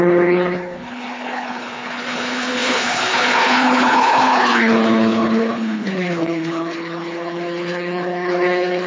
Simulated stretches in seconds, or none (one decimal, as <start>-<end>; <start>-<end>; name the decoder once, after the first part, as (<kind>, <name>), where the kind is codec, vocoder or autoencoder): 0.0-8.9 (codec, HILCodec)